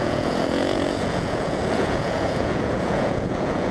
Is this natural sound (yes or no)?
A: no